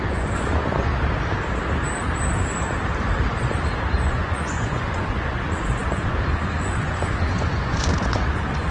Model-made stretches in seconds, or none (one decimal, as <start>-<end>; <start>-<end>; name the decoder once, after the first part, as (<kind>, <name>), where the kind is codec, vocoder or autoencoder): 0.0-0.9 (vocoder, Vocos); 4.0-8.7